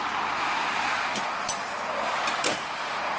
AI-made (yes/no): no